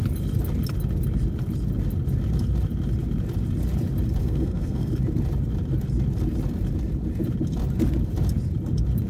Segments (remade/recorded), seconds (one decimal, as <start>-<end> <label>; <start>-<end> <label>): 0.0-4.2 recorded; 4.2-4.9 remade; 4.9-9.1 recorded